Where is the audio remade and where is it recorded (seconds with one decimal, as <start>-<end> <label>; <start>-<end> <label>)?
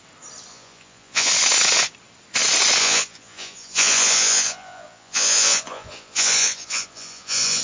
0.0-0.5 recorded; 0.5-1.3 remade; 1.3-2.8 recorded; 2.8-7.6 remade